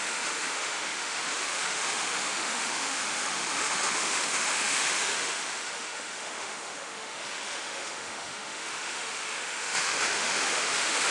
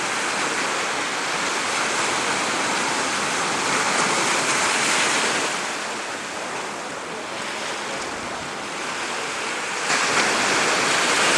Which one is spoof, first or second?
first